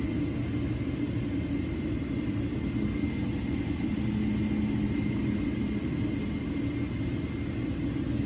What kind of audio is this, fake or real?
real